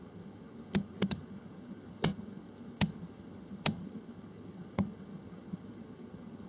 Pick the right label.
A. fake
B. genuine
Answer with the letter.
A